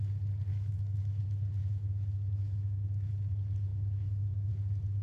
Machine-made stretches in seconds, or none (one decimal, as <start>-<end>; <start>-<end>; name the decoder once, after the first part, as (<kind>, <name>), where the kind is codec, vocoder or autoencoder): 0.5-1.2 (autoencoder, DAC-VAE); 1.6-3.1; 3.7-4.5